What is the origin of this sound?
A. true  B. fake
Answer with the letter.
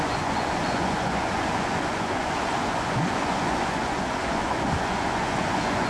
B